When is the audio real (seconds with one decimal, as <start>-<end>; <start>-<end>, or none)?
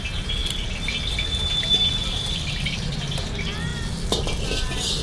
0.0-5.0